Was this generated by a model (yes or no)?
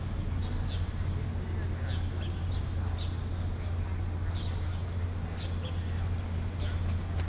no